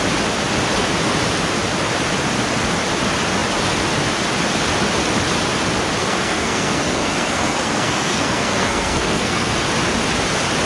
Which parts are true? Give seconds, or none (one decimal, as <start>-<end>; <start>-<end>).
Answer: 0.0-6.0; 9.5-10.7